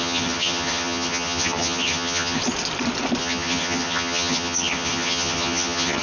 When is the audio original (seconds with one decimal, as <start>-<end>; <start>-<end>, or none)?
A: 2.4-3.2